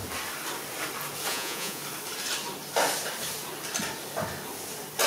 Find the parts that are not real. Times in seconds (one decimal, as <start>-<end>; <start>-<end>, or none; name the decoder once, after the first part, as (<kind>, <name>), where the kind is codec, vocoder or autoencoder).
1.3-1.8 (vocoder, Vocos)